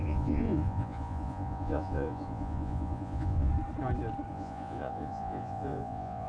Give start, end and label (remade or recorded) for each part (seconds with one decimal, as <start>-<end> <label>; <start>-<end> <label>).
0.0-3.5 remade; 3.5-4.3 recorded; 4.3-6.3 remade